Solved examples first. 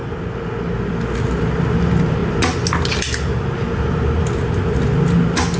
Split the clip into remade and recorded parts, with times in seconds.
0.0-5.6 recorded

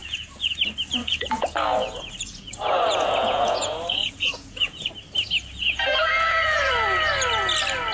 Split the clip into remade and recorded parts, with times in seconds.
0.0-0.6 remade; 0.6-1.0 recorded; 1.0-4.9 remade; 4.9-5.6 recorded; 5.6-6.7 remade; 6.7-7.9 recorded

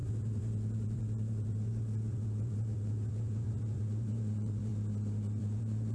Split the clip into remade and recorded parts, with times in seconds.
0.0-4.7 remade; 4.7-5.4 recorded; 5.4-5.9 remade

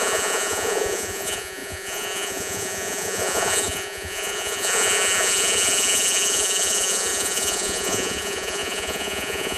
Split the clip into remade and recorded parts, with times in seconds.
0.0-9.6 remade